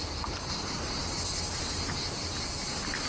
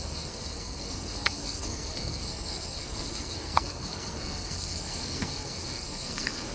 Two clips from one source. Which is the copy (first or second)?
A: second